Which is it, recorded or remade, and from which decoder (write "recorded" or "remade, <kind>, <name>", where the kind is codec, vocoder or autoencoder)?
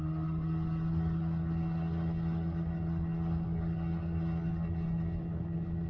recorded